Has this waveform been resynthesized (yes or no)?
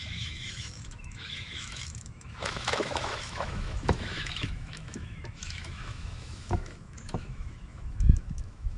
yes